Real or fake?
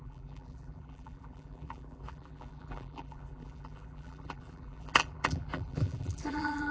fake